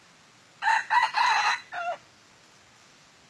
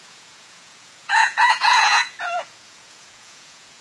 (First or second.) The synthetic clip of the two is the second